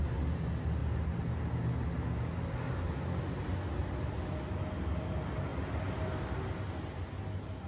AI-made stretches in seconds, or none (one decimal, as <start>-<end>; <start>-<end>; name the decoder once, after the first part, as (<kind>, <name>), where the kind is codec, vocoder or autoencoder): none